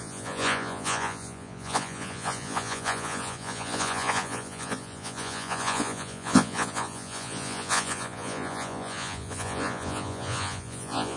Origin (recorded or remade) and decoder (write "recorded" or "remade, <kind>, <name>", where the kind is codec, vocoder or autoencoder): remade, vocoder, Vocos